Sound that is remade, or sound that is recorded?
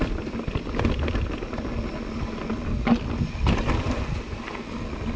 recorded